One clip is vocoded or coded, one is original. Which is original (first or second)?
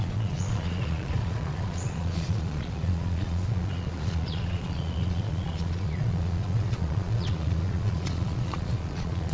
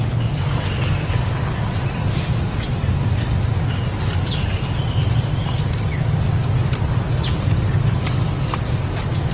second